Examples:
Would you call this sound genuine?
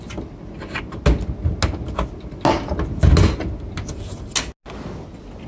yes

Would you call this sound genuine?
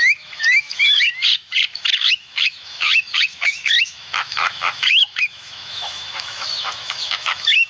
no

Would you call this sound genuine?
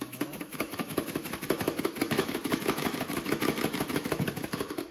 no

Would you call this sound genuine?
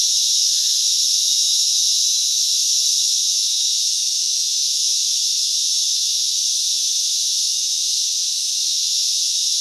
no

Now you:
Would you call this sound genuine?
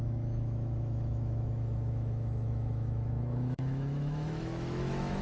no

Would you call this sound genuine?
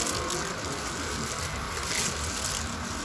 yes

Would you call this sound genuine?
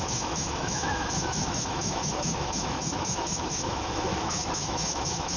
no